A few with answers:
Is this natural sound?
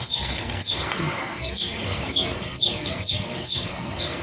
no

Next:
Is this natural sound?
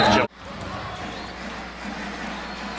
yes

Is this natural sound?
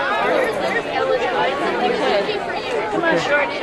yes